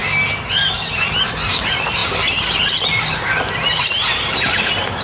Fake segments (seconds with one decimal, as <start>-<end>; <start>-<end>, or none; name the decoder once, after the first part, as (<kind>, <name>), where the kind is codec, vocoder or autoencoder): none